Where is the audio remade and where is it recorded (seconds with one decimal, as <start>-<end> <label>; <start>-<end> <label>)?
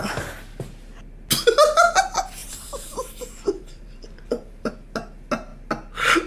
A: 0.0-2.4 recorded; 2.4-4.7 remade; 4.7-6.3 recorded